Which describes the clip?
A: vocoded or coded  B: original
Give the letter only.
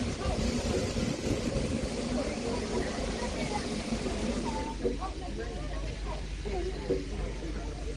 B